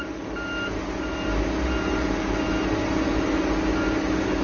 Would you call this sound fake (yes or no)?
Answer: no